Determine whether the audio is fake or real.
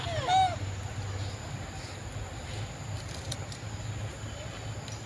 real